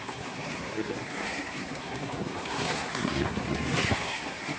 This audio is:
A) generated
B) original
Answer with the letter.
A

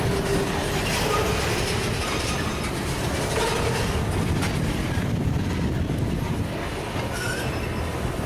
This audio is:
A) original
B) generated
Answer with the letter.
A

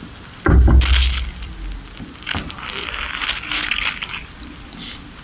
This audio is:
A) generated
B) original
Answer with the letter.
B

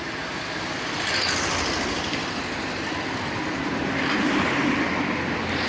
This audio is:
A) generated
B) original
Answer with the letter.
B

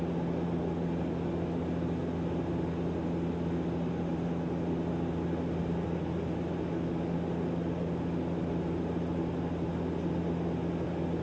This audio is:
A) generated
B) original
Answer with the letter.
B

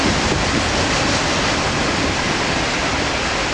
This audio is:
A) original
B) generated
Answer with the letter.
A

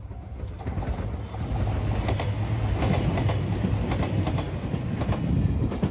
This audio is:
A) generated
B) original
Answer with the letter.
B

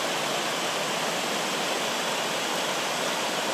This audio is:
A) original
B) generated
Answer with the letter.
A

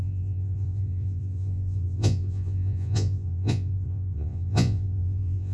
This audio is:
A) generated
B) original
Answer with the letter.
A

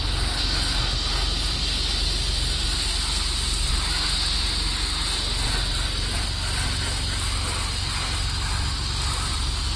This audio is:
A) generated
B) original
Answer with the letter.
B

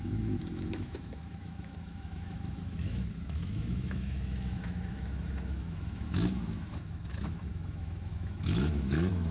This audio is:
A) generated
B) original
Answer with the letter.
A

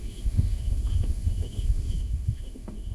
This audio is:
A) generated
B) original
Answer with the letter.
A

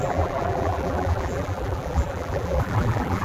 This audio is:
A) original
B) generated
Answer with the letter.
B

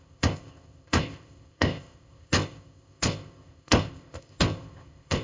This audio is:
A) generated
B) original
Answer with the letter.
A